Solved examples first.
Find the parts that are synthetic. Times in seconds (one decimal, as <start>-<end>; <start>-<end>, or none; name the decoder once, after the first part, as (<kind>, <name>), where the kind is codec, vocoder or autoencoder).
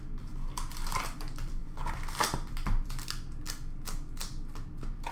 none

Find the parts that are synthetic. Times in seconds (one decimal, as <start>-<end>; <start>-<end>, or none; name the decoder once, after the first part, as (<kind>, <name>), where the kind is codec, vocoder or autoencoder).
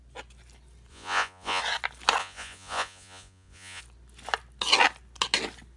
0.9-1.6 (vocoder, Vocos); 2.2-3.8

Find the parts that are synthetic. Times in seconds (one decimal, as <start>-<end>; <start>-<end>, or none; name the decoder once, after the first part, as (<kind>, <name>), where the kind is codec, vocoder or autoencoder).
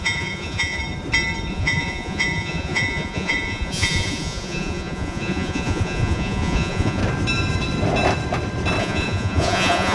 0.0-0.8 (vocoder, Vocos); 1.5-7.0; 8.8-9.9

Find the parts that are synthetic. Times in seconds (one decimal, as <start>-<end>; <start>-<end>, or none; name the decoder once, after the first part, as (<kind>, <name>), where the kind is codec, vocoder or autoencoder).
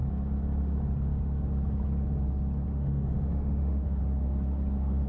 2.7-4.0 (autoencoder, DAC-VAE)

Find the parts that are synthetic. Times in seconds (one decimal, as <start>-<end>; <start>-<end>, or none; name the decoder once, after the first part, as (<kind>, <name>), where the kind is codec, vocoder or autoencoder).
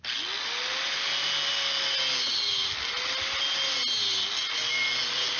none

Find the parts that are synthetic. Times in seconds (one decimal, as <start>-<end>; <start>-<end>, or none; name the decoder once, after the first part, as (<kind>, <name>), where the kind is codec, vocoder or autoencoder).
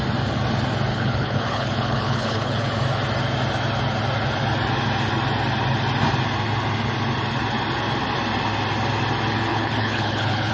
0.9-2.7 (codec, HILCodec); 9.5-10.5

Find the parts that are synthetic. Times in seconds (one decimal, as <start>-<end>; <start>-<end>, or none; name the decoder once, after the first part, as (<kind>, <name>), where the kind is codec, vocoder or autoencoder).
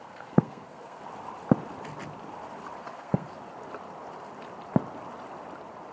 0.0-1.0 (codec, SNAC); 2.8-3.4